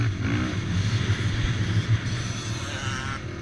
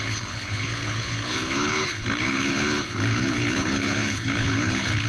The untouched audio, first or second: first